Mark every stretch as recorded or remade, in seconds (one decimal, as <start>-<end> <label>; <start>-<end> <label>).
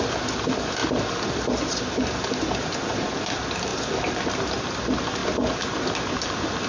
0.0-6.7 recorded